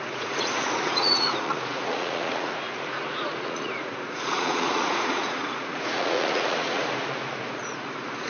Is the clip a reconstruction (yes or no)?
yes